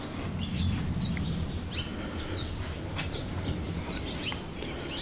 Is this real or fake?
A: real